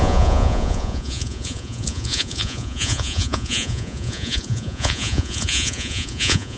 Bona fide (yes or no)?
no